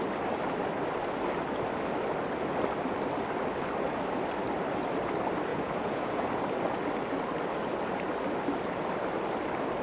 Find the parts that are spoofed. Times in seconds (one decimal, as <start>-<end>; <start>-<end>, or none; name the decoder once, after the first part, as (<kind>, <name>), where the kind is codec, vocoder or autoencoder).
5.5-6.4 (vocoder, Vocos)